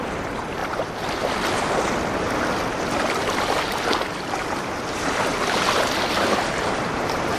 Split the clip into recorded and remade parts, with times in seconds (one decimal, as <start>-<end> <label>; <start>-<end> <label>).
0.0-0.6 remade; 0.6-4.4 recorded; 4.4-5.3 remade; 5.3-6.2 recorded; 6.2-7.4 remade